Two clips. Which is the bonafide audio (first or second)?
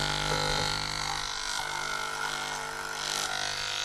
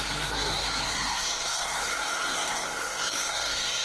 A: first